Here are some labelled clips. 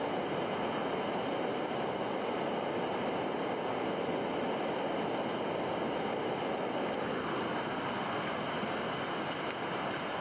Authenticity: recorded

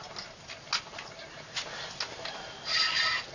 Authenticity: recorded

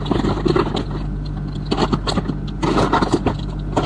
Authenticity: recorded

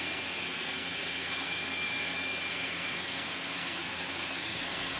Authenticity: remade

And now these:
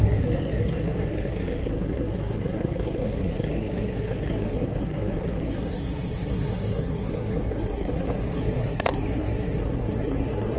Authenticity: remade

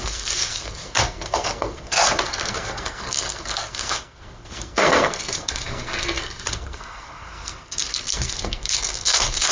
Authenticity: remade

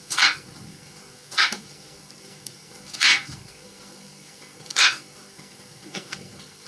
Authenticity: remade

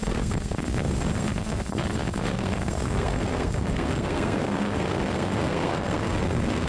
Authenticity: remade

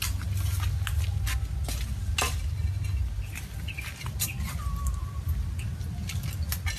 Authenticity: recorded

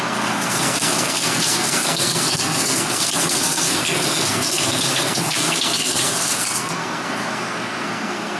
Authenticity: remade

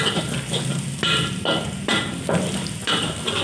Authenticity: recorded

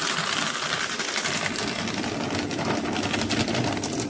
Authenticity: recorded